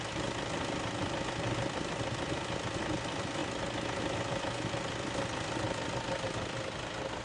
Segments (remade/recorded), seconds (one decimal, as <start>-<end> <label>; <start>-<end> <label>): 0.0-3.4 remade; 3.4-4.0 recorded; 4.0-7.2 remade